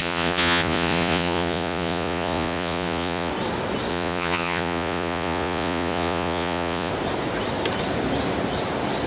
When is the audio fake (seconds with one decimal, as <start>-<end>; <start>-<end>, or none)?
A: 0.0-3.3; 3.9-6.9